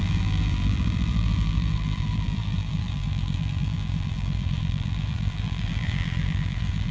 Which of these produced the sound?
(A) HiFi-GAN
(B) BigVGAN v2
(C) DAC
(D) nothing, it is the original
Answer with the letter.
B